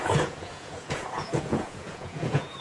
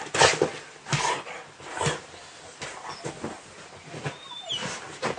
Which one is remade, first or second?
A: first